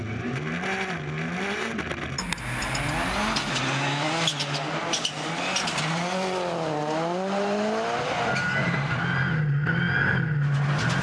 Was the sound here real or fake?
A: real